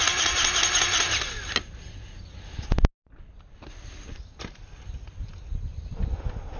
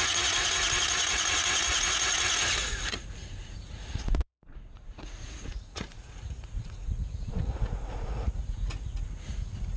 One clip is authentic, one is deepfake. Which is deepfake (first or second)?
second